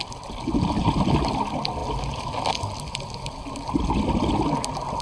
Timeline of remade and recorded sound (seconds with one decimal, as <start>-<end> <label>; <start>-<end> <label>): 0.0-5.0 recorded